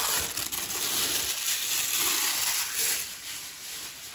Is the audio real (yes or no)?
yes